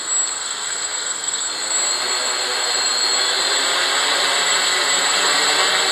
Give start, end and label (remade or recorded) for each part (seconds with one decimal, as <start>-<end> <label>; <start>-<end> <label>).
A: 0.0-0.4 recorded; 0.4-1.4 remade; 1.4-5.9 recorded